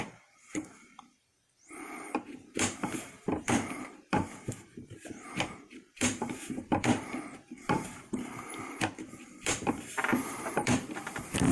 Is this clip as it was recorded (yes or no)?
no